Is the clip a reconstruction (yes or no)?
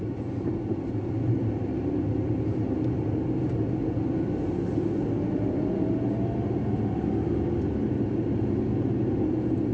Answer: no